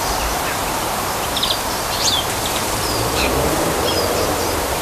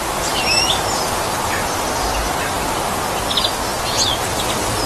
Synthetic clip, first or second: first